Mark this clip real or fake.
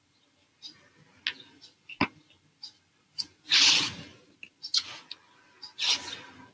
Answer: real